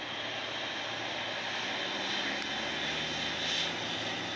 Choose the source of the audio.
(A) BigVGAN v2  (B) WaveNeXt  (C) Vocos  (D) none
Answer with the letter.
D